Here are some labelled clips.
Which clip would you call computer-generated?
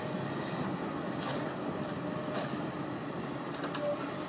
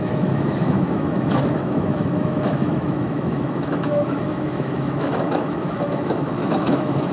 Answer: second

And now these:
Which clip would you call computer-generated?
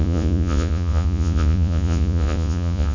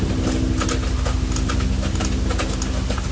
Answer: first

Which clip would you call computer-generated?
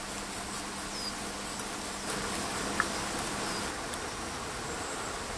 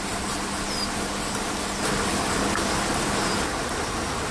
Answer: second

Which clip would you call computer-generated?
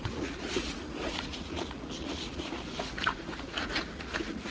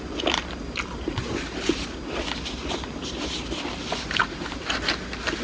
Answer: first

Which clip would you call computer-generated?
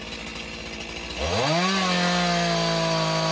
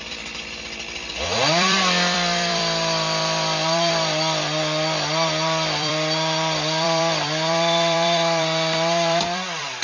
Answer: second